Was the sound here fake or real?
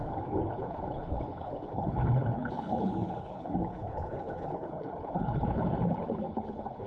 fake